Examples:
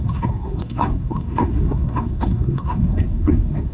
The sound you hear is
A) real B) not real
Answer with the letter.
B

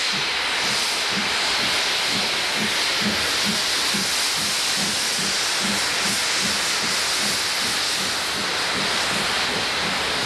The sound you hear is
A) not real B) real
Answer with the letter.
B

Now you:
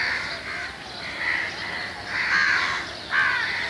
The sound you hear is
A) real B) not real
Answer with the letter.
A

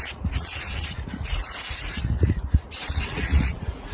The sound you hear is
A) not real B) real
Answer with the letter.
A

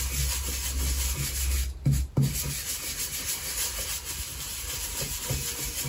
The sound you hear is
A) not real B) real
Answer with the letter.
B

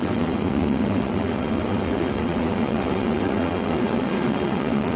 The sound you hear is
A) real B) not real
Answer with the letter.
B